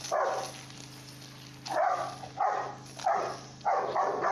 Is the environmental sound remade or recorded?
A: recorded